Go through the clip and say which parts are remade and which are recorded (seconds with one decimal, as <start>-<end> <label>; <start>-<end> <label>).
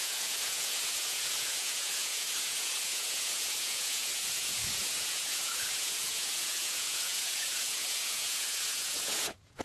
0.0-9.6 remade